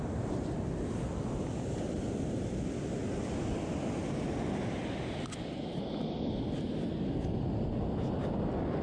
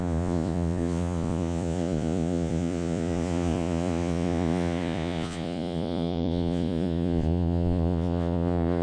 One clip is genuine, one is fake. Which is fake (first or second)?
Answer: second